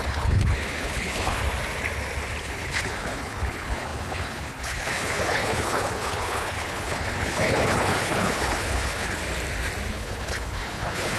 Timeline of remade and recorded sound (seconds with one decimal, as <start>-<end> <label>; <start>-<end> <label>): 0.0-1.4 remade; 1.4-2.4 recorded; 2.4-9.2 remade; 9.2-9.9 recorded; 9.9-11.2 remade